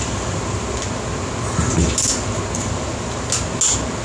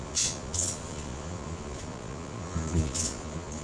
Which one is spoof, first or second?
second